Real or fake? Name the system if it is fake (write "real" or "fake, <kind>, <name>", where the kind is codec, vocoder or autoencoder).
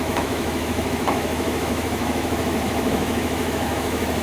fake, autoencoder, DAC-VAE